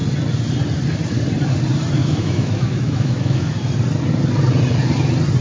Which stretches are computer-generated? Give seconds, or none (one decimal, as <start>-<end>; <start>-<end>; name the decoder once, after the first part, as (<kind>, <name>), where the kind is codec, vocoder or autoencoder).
2.0-3.5 (autoencoder, DAC-VAE)